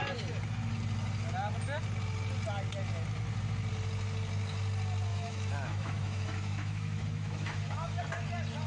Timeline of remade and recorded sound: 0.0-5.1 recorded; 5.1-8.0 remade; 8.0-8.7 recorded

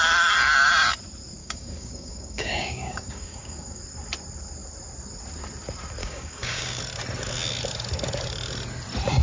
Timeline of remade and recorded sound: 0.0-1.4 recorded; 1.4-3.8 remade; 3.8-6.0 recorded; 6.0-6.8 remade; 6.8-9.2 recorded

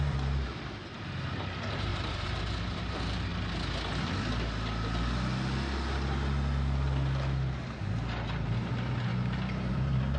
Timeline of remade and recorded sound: 0.0-3.3 remade; 3.3-7.8 recorded; 7.8-9.1 remade; 9.1-9.7 recorded; 9.7-10.2 remade